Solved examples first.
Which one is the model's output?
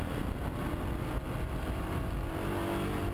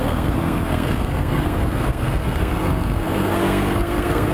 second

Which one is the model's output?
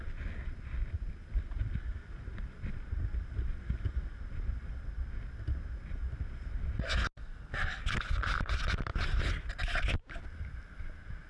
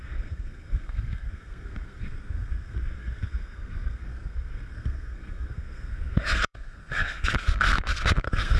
second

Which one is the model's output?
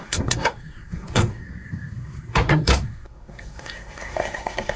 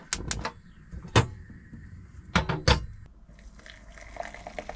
first